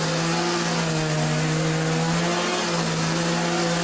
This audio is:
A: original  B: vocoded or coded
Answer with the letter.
A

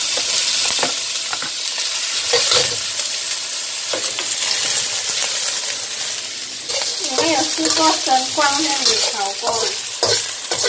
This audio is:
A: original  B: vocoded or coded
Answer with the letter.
A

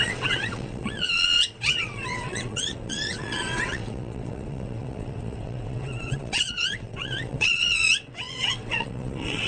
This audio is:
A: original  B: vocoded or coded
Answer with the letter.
B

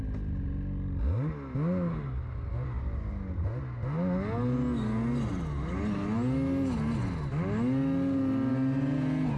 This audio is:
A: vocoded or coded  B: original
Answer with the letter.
B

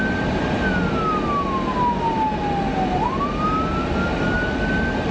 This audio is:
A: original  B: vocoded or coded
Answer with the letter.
A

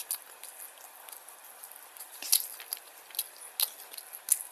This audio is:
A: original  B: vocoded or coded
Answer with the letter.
A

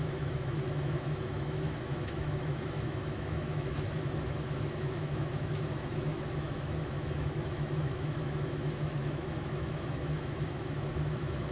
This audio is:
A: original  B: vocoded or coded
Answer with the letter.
B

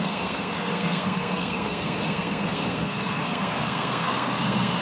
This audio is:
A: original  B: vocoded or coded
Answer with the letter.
B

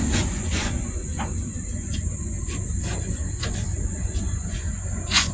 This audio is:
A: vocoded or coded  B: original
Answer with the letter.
A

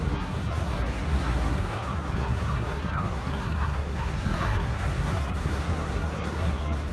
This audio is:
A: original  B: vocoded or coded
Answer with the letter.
B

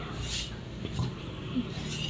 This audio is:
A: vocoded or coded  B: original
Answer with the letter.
B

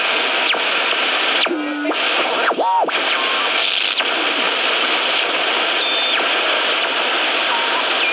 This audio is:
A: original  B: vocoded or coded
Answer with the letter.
A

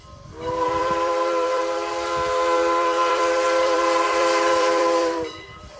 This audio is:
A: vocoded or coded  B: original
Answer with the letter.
A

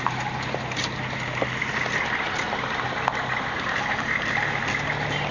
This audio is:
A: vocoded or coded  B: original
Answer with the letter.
B